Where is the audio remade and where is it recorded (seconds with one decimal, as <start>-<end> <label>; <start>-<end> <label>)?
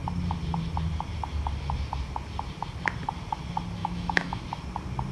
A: 0.0-3.8 recorded; 3.8-4.4 remade; 4.4-5.1 recorded